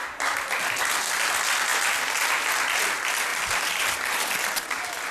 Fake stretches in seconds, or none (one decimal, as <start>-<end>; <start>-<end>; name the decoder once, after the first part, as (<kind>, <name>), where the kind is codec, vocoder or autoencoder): 3.3-4.2 (vocoder, BigVGAN v2)